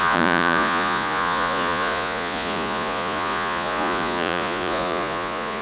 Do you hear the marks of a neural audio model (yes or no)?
yes